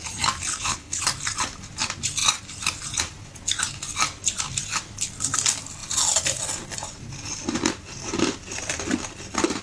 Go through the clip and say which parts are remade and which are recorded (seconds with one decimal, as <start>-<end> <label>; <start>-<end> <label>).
0.0-0.5 recorded; 0.5-1.0 remade; 1.0-9.6 recorded